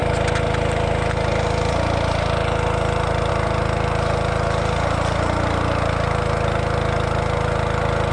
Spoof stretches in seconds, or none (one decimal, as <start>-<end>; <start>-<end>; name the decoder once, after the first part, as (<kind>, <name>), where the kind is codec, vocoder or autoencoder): none